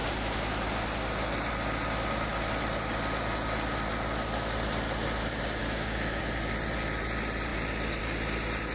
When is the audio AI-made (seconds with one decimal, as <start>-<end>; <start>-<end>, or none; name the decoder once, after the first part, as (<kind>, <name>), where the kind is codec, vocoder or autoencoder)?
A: 5.6-6.2 (autoencoder, DAC-VAE)